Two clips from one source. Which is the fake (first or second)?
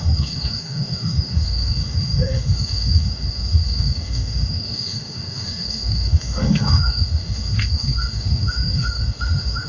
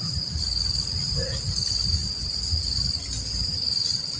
first